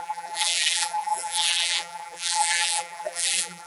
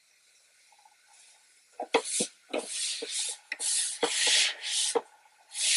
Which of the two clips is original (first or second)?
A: second